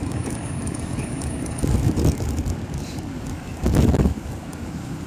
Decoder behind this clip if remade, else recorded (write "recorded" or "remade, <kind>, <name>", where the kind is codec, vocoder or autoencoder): remade, codec, DAC